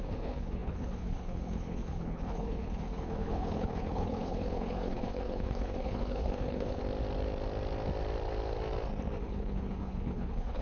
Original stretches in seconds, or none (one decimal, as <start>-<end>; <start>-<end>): 6.8-9.2